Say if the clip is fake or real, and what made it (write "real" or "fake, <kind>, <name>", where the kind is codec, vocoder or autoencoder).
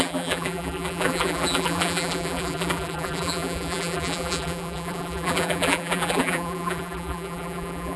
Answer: fake, vocoder, BigVGAN v2